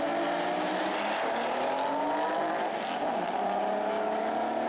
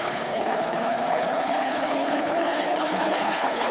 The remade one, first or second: second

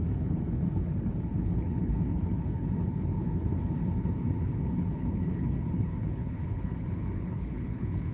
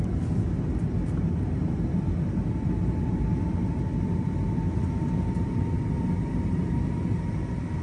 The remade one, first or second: first